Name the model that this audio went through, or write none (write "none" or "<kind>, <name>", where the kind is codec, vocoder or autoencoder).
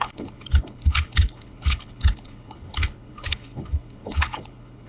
codec, HILCodec